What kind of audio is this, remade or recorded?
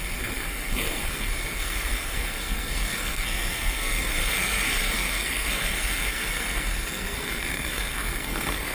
remade